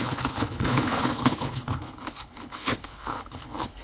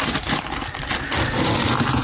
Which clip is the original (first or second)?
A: second